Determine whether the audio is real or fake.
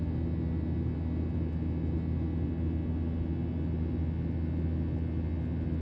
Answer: real